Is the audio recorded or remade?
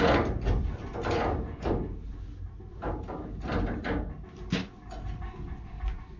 recorded